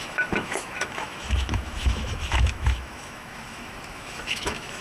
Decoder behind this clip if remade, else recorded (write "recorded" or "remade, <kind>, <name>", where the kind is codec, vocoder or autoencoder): remade, autoencoder, DAC-VAE